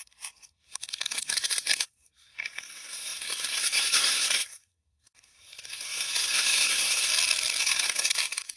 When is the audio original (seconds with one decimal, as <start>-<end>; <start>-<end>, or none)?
7.1-7.6